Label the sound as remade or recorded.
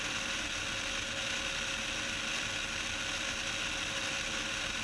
recorded